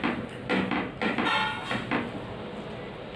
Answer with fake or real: real